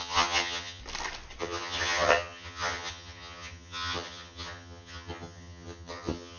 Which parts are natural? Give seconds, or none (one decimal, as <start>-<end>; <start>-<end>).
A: 0.8-1.4